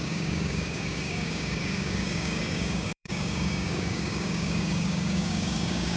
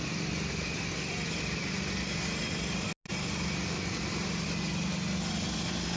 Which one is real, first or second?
second